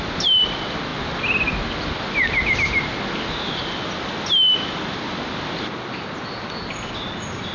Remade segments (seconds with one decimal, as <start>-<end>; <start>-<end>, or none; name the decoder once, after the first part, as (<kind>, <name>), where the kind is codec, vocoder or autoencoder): none